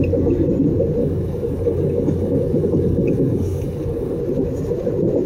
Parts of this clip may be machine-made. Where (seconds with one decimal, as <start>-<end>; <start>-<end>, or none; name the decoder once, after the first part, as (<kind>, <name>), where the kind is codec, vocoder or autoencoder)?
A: 1.0-4.2 (codec, DAC)